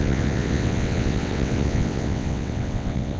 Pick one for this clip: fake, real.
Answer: fake